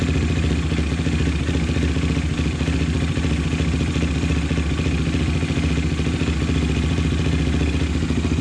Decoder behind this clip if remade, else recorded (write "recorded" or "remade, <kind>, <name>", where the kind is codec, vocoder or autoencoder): recorded